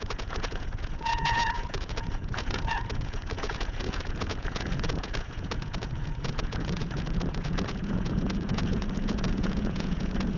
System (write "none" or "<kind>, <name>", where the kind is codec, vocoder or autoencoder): vocoder, Vocos